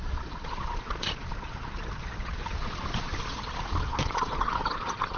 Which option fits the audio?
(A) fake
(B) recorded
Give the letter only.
A